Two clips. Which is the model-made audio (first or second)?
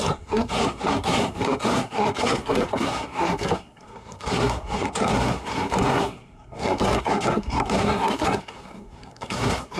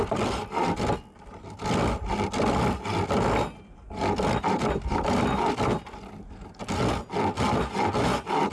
first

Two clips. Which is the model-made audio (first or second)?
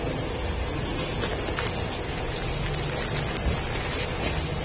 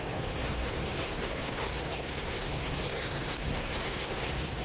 second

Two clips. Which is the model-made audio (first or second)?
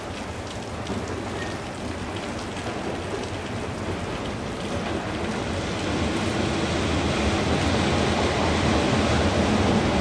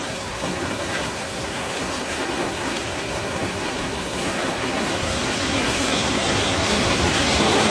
second